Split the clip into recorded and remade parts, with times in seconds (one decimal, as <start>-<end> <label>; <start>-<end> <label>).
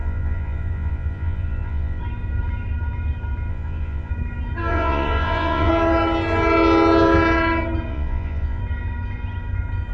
0.0-2.0 remade; 2.0-3.5 recorded; 3.5-4.1 remade; 4.1-4.7 recorded; 4.7-5.7 remade; 5.7-7.9 recorded; 7.9-8.6 remade; 8.6-9.9 recorded